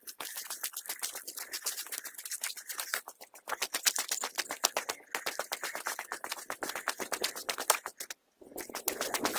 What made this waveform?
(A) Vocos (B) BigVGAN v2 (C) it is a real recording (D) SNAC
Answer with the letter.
C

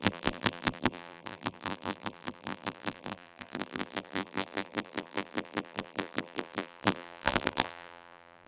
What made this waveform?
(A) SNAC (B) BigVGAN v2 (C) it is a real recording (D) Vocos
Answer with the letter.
B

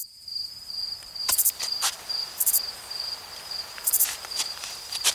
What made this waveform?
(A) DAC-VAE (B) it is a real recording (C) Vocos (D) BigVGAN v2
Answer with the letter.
D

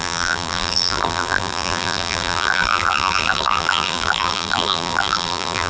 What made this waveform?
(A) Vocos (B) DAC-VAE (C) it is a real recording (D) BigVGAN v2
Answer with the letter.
D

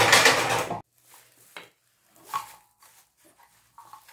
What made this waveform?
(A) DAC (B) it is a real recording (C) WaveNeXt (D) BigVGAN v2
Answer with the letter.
B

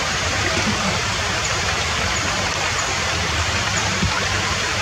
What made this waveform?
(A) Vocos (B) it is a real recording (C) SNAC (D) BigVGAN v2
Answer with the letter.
D